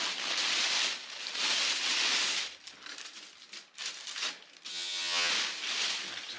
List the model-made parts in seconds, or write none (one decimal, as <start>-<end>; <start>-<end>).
4.7-5.3